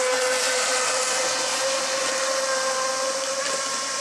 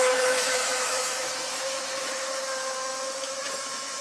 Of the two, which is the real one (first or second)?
first